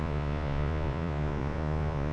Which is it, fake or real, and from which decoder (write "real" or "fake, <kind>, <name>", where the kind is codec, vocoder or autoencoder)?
fake, vocoder, Vocos